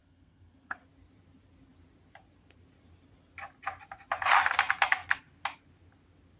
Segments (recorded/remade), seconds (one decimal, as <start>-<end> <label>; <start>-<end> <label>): 0.0-0.8 remade; 0.8-6.4 recorded